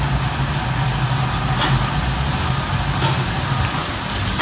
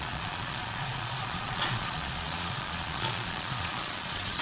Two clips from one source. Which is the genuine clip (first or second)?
first